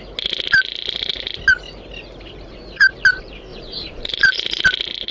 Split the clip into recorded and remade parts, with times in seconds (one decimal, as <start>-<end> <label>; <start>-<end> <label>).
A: 0.0-3.5 recorded; 3.5-4.1 remade; 4.1-5.1 recorded